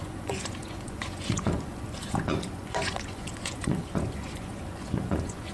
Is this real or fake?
fake